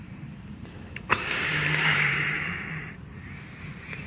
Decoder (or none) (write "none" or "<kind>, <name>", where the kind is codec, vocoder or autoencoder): vocoder, BigVGAN v2